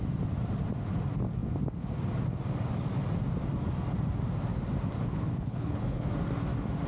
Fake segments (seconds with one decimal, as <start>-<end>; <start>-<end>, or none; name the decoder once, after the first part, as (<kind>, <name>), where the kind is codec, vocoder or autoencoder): 5.0-6.1 (codec, HILCodec)